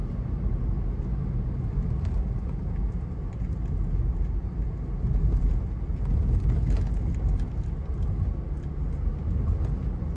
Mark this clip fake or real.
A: real